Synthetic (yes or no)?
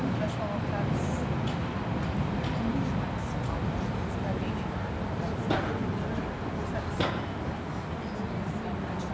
no